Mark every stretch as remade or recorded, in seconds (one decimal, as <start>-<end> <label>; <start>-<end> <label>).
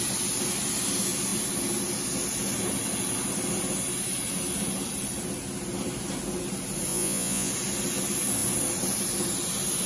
0.0-6.9 recorded; 6.9-7.5 remade; 7.5-9.9 recorded